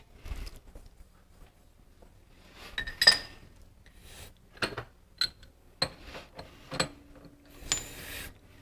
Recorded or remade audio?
recorded